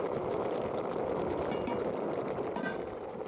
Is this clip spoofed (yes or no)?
no